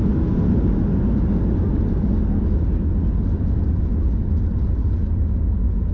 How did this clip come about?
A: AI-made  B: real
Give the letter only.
B